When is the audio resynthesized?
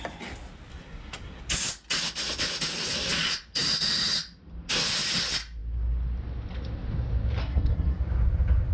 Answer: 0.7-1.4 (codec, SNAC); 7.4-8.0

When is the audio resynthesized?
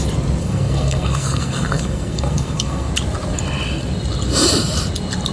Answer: 0.4-2.9 (codec, SNAC)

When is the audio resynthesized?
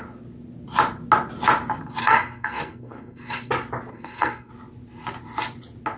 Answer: 2.0-3.5 (codec, SNAC); 3.9-4.5